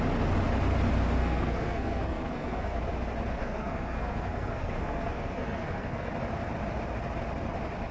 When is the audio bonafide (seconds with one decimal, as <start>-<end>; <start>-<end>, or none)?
0.0-1.2; 2.8-3.4; 6.1-7.9